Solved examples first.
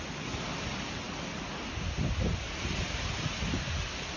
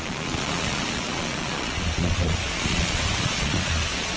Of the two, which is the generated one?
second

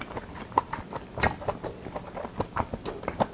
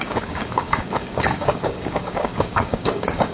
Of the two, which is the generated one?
second